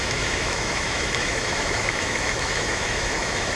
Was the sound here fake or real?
fake